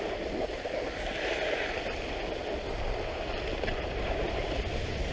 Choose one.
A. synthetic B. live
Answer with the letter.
B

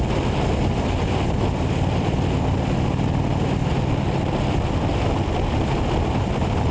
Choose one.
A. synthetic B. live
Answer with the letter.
B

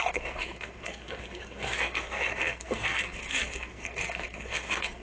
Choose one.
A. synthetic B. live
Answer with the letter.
A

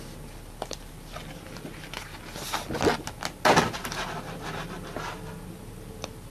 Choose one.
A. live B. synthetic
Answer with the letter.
A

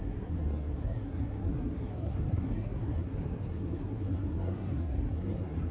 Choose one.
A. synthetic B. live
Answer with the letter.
A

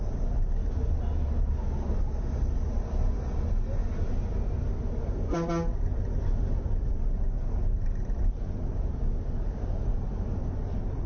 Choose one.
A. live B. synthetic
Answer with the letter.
A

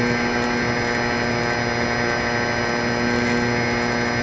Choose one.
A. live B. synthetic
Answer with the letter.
A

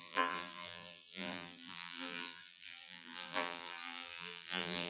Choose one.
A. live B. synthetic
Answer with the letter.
B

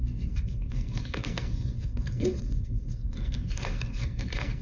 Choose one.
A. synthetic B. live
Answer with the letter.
A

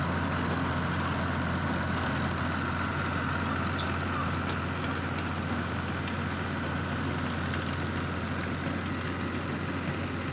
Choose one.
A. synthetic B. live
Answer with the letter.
B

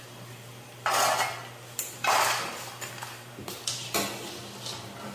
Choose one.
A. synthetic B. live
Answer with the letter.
B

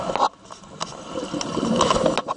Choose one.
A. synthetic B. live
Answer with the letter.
B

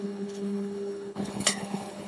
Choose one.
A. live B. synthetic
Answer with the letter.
B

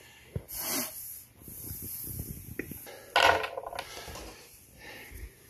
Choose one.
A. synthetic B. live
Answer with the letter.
B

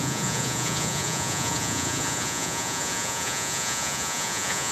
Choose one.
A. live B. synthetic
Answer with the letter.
B